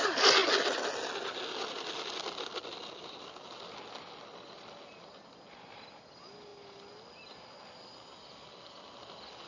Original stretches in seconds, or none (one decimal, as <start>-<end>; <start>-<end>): 0.0-9.5